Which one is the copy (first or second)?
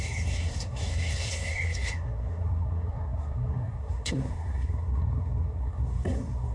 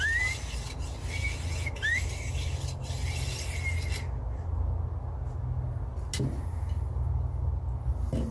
first